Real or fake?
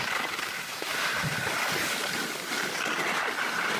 real